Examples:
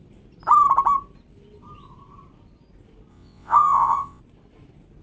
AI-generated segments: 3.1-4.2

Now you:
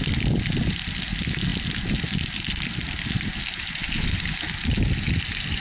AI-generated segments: none

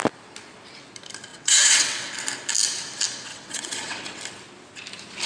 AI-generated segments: 1.3-2.1; 3.3-4.2

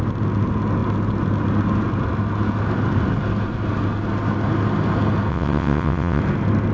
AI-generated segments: 5.3-6.2

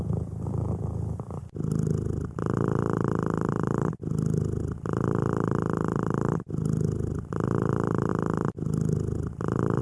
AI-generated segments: none